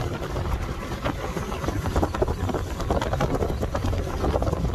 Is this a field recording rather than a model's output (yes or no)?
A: yes